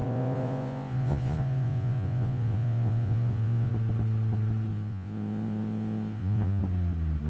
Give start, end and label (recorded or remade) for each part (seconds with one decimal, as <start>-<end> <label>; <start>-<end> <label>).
0.0-3.7 remade; 3.7-4.7 recorded; 4.7-6.6 remade; 6.6-7.3 recorded